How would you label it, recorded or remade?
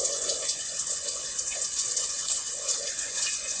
remade